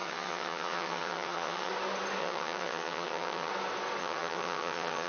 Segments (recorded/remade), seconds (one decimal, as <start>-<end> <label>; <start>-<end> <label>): 0.0-1.7 remade; 1.7-2.2 recorded; 2.2-3.5 remade; 3.5-4.0 recorded; 4.0-5.1 remade